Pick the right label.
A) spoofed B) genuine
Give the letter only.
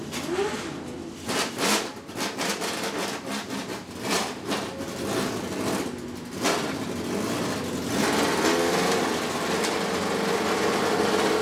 B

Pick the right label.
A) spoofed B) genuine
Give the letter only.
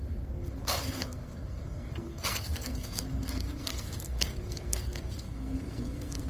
A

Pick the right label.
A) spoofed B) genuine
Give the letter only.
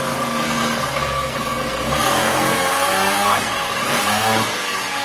A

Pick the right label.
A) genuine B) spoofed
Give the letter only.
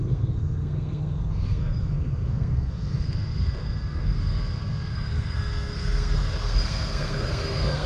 B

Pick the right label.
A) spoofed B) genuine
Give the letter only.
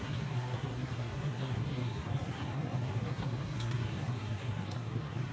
A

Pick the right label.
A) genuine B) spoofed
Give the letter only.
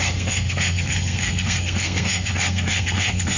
B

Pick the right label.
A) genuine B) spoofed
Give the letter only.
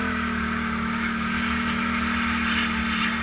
A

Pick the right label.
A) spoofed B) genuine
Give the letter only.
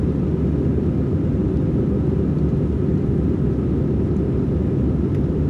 B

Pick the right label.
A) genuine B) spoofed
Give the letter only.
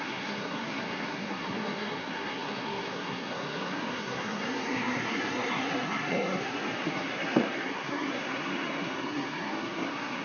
B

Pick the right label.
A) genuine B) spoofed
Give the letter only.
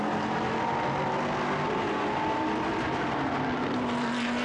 A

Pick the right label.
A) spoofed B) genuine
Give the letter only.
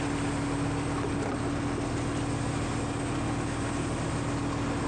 B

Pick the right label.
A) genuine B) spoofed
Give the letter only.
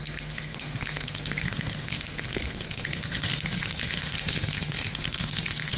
B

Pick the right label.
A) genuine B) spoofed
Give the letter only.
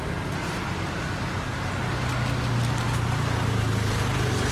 A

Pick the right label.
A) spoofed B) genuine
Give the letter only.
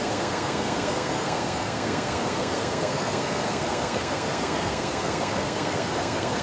A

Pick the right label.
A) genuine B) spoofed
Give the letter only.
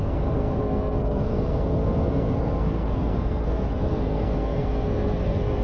B